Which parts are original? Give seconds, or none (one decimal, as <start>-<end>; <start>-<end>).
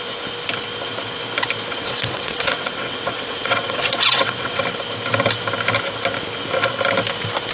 0.0-1.7; 4.6-7.5